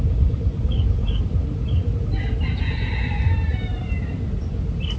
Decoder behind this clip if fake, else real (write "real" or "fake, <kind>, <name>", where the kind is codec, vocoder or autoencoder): real